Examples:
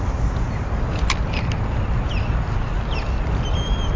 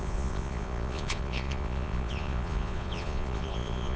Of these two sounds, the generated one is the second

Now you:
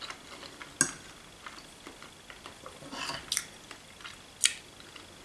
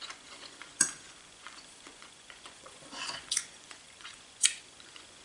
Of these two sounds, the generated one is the second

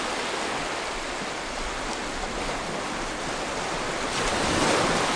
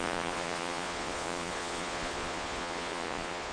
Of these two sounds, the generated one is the second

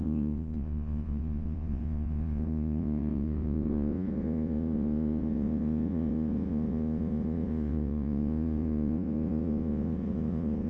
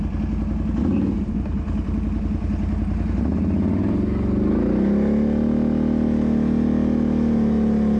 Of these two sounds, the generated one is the first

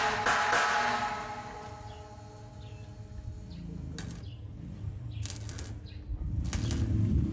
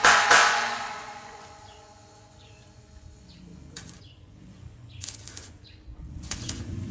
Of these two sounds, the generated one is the second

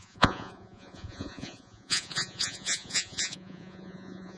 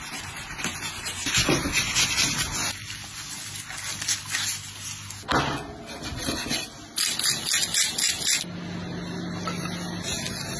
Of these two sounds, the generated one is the first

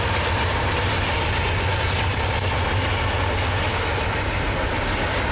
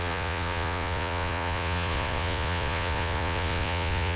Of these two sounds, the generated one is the second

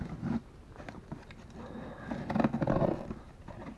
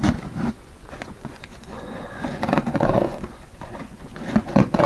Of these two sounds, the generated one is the second